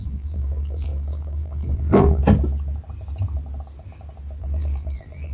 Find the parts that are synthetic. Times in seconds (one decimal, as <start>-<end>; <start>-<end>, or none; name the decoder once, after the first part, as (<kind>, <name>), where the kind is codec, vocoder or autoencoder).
0.0-2.2 (vocoder, BigVGAN v2); 4.4-5.3